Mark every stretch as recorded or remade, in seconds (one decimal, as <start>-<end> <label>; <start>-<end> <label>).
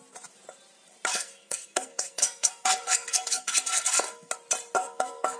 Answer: 0.0-1.1 recorded; 1.1-4.3 remade; 4.3-4.8 recorded; 4.8-5.4 remade